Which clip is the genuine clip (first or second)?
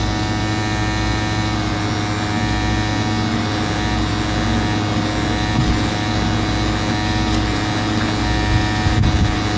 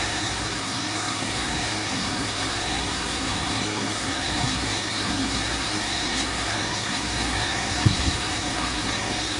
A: first